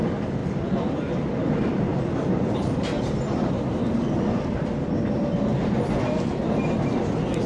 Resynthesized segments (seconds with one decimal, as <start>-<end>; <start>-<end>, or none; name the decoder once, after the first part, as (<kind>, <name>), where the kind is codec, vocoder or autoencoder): none